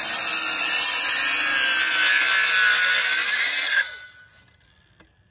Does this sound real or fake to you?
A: real